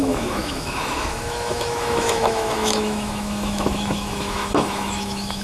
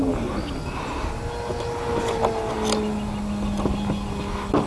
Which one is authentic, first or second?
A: second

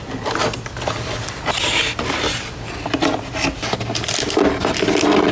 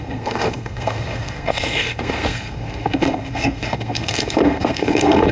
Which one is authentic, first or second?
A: first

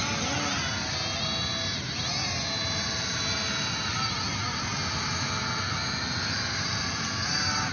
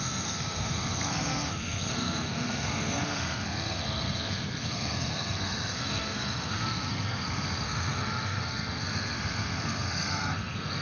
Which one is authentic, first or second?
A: first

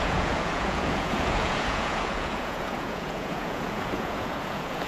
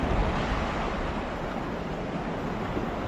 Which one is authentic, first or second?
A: second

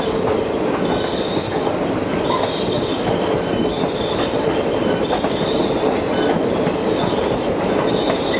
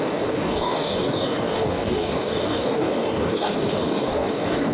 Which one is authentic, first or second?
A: first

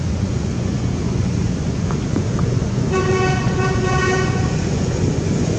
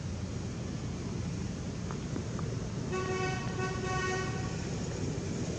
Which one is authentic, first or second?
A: second